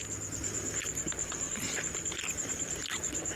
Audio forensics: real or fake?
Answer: fake